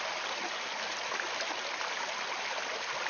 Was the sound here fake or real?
real